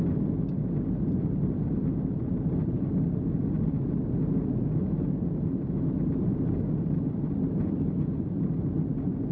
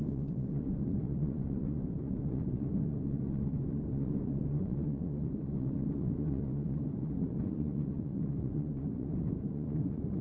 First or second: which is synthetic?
second